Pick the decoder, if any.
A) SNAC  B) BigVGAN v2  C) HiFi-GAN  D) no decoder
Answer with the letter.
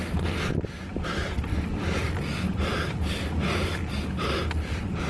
D